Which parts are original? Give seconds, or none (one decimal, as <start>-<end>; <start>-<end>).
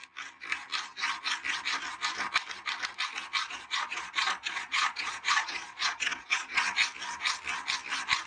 0.0-3.4; 6.6-8.3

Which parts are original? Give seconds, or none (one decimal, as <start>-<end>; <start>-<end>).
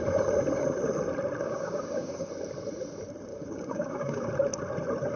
0.0-1.4; 2.3-3.3; 4.3-5.2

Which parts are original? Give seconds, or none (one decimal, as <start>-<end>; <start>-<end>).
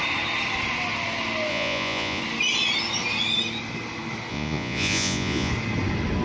0.0-1.5; 2.2-4.3; 5.5-6.2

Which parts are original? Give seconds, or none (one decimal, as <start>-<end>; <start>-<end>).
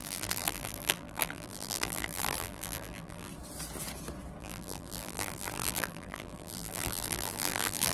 3.3-4.4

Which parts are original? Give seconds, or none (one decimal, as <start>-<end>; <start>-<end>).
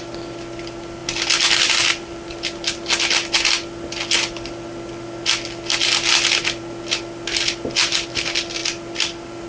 0.0-9.5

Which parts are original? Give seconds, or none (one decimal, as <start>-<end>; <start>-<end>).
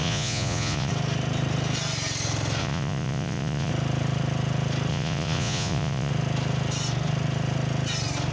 0.9-2.6; 3.7-4.9; 6.1-8.3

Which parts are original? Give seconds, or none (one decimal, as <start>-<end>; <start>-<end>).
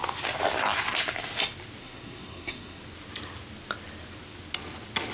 0.0-1.8; 2.8-5.1